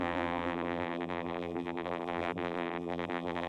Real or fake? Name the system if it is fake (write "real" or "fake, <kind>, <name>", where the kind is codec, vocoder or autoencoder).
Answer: fake, vocoder, BigVGAN v2